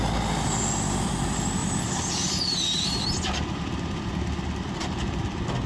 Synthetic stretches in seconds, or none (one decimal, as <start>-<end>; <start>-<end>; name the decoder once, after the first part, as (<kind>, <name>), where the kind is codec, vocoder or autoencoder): 1.6-5.0 (vocoder, BigVGAN v2)